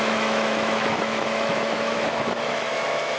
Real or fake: fake